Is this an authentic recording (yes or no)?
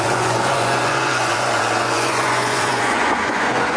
no